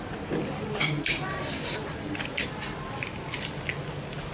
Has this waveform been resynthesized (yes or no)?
no